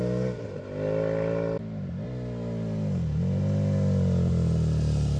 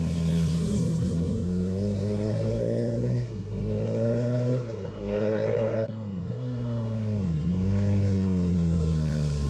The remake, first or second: second